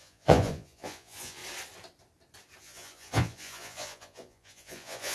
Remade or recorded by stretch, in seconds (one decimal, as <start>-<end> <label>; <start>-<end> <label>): 0.0-1.4 remade; 1.4-2.6 recorded; 2.6-5.1 remade

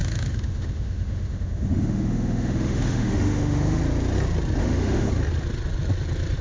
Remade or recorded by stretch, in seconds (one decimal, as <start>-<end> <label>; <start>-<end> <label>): 0.0-3.8 remade; 3.8-4.6 recorded; 4.6-5.1 remade; 5.1-6.4 recorded

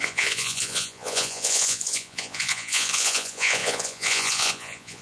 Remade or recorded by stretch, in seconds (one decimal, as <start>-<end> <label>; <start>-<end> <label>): 0.0-5.0 remade

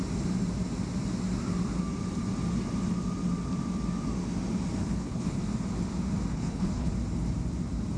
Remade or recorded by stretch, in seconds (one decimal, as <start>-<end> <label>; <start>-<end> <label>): 0.0-4.8 recorded; 4.8-5.4 remade; 5.4-6.3 recorded; 6.3-6.9 remade; 6.9-8.0 recorded

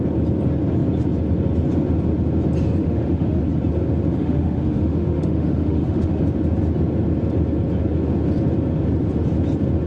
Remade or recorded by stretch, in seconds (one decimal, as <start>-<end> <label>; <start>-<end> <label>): 0.0-2.8 recorded; 2.8-3.4 remade; 3.4-4.1 recorded; 4.1-6.2 remade; 6.2-9.9 recorded

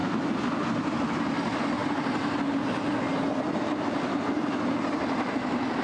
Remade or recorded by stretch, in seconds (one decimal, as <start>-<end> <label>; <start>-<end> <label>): 0.0-5.8 recorded

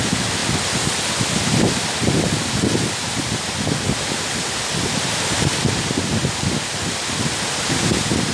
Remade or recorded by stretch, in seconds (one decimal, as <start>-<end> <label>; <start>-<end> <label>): 0.0-8.3 recorded

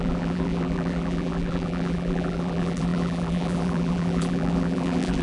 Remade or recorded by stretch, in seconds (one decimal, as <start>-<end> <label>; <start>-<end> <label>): 0.0-5.2 remade